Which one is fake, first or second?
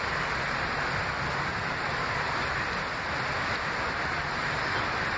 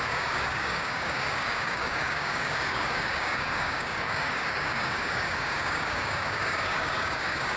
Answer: second